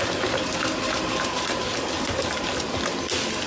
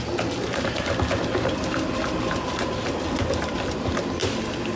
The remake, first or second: second